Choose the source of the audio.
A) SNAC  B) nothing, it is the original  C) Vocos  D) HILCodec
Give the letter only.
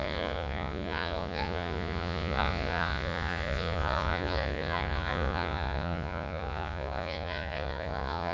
C